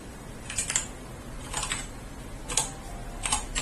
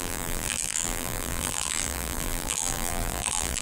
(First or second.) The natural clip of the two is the first